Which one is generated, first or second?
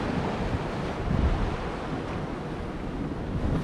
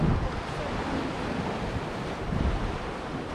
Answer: second